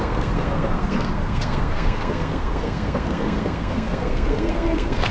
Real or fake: fake